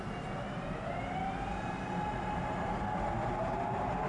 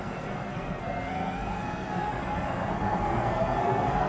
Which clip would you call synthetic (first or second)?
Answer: second